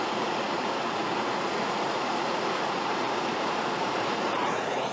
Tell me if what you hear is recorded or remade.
remade